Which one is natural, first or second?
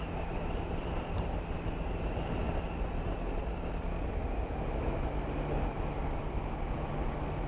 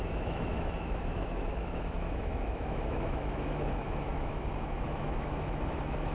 first